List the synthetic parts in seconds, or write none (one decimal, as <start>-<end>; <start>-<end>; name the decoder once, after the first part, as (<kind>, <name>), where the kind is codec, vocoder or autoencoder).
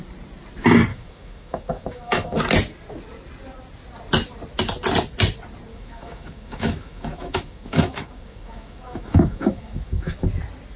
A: 0.9-2.4 (autoencoder, DAC-VAE); 5.7-10.3